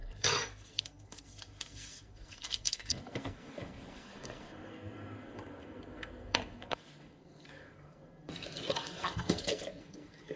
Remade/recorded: remade